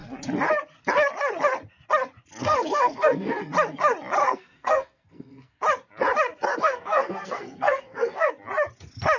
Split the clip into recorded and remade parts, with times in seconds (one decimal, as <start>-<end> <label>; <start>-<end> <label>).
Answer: 0.0-2.4 recorded; 2.4-3.4 remade; 3.4-4.2 recorded; 4.2-5.6 remade; 5.6-6.5 recorded; 6.5-8.3 remade; 8.3-9.2 recorded